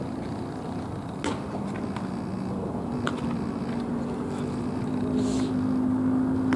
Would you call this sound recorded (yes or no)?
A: yes